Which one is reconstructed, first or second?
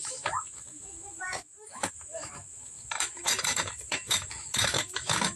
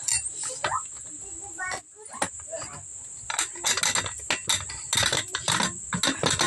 first